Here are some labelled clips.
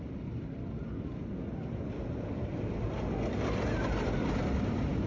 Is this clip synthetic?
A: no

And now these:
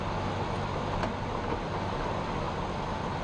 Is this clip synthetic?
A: no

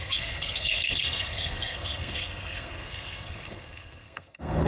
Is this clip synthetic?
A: yes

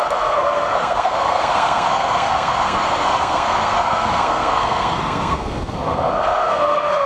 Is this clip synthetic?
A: yes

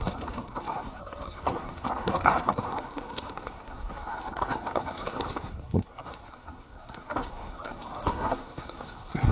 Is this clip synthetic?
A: yes